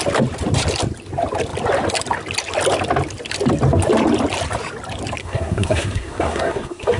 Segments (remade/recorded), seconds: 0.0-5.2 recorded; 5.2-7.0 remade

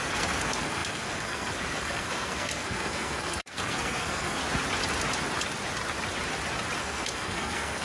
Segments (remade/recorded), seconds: 0.0-4.4 remade; 4.4-6.8 recorded; 6.8-7.8 remade

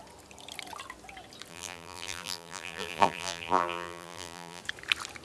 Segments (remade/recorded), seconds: 0.0-1.5 recorded; 1.5-4.6 remade; 4.6-5.2 recorded

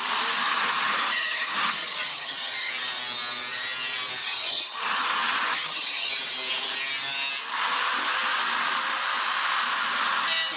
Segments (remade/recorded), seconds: 0.0-0.5 recorded; 0.5-2.7 remade; 2.7-4.2 recorded; 4.2-6.1 remade; 6.1-10.6 recorded

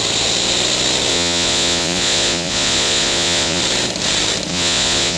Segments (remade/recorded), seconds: 0.0-1.1 recorded; 1.1-3.6 remade; 3.6-4.5 recorded; 4.5-5.2 remade

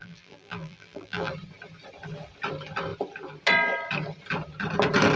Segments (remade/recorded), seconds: 0.0-1.3 remade; 1.3-5.2 recorded